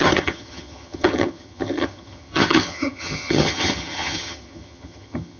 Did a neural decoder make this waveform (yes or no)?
yes